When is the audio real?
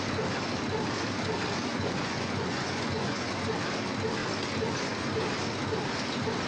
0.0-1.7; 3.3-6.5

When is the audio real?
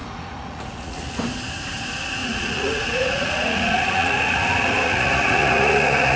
1.2-2.2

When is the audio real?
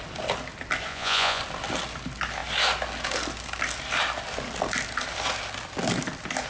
0.0-0.9; 1.4-6.5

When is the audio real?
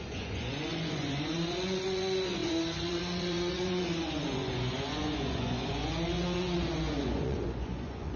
none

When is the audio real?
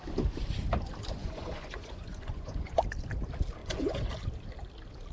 0.0-1.2; 2.7-3.6; 4.1-5.1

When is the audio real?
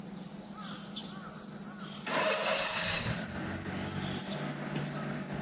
0.0-5.4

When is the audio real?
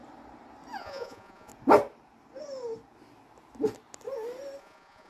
0.0-0.8; 1.5-4.6